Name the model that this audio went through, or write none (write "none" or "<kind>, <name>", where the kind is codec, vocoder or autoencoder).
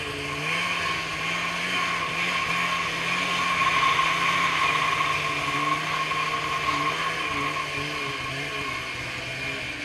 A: none